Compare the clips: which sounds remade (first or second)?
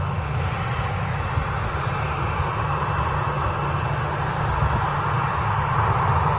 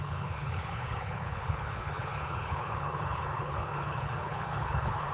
second